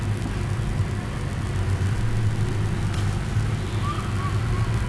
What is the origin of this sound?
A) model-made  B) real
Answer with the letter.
B